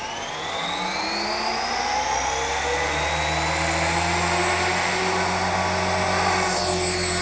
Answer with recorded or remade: recorded